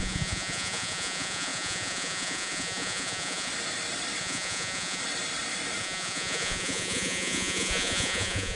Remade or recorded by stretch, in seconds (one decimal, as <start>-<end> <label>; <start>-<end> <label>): 0.0-3.5 remade; 3.5-4.2 recorded; 4.2-5.0 remade; 5.0-5.8 recorded; 5.8-8.6 remade